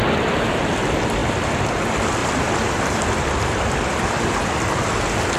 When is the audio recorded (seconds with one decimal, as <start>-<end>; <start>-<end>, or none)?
0.0-2.2; 3.9-5.4